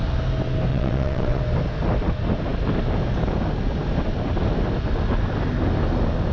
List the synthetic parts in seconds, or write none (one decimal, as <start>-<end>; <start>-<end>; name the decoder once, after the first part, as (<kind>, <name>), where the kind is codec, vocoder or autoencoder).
0.7-1.4 (vocoder, WaveNeXt)